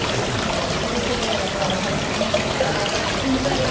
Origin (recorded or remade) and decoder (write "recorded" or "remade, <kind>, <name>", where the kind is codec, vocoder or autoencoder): recorded